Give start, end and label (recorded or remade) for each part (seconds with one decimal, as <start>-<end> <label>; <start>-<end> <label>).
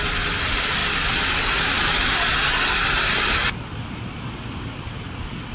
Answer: 0.0-5.5 recorded